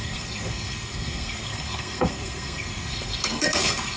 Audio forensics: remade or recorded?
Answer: remade